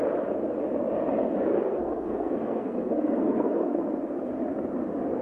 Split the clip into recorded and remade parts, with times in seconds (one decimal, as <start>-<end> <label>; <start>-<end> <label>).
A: 0.0-1.5 recorded; 1.5-4.3 remade; 4.3-5.2 recorded